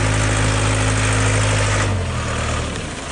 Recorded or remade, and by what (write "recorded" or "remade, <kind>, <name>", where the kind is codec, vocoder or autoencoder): recorded